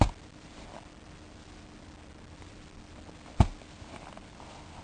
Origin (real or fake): real